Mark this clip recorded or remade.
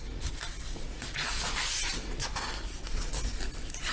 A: recorded